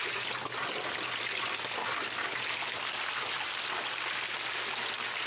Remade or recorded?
recorded